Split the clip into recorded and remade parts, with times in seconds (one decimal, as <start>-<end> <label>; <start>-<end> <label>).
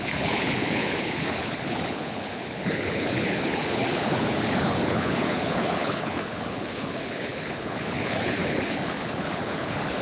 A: 0.0-10.0 remade